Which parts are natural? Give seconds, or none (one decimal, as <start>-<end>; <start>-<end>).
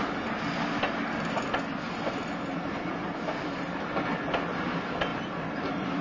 0.0-6.0